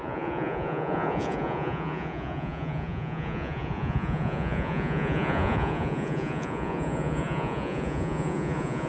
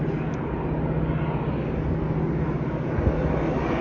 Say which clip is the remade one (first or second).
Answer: first